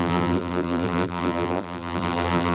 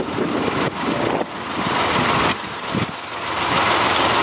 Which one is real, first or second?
second